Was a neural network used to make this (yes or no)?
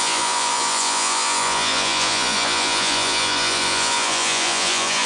yes